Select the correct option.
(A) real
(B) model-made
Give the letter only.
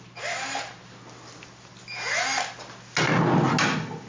A